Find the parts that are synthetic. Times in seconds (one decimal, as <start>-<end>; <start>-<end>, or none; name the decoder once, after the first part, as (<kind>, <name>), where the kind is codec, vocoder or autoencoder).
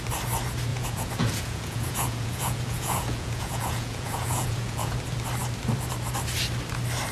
0.7-5.0 (vocoder, Vocos)